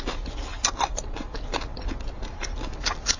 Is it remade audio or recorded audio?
recorded